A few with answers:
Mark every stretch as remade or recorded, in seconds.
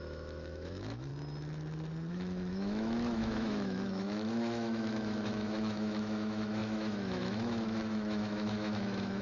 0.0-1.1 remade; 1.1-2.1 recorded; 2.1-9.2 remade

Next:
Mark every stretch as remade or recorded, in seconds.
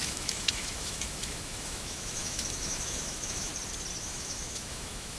0.0-3.5 remade; 3.5-4.0 recorded; 4.0-5.2 remade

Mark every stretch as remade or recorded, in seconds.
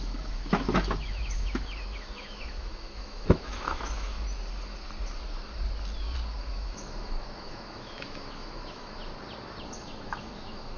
0.0-4.1 remade; 4.1-6.4 recorded; 6.4-9.0 remade; 9.0-9.8 recorded; 9.8-10.8 remade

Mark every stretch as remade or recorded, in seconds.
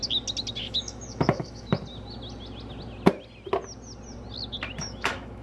0.0-0.6 recorded; 0.6-1.7 remade; 1.7-4.8 recorded; 4.8-5.4 remade